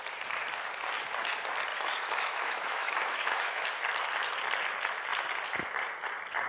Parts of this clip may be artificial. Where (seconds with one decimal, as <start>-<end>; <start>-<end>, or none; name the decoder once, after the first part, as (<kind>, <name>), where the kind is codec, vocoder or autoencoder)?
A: 1.7-3.6 (autoencoder, DAC-VAE)